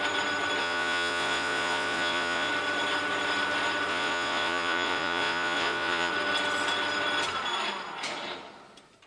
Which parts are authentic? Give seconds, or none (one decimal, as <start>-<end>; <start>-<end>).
0.0-0.6; 2.5-3.9; 6.1-9.1